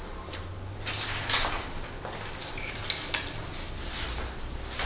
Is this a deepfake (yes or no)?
no